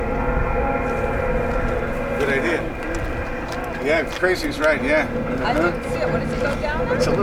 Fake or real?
real